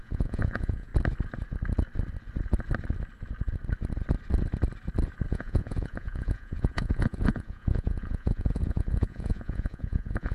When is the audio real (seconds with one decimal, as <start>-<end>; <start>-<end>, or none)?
0.9-5.3

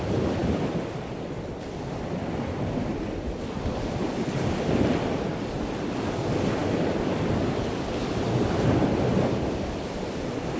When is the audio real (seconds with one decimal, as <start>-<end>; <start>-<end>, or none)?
0.0-10.6

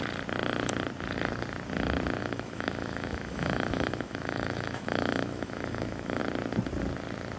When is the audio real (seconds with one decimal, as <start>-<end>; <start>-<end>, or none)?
0.0-2.2; 6.2-7.4

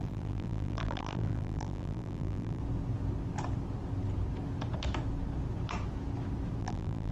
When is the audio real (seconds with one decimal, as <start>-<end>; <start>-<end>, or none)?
2.6-6.6

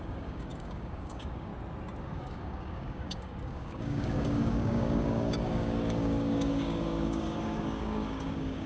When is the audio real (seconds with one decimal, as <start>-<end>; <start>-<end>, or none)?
1.5-2.0

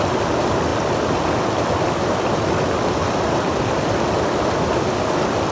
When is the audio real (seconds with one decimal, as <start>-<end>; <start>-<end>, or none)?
0.0-5.5